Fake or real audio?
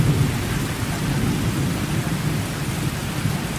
real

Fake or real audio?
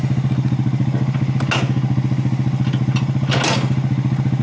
real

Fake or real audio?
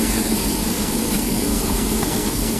fake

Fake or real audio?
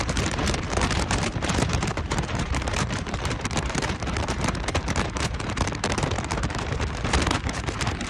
fake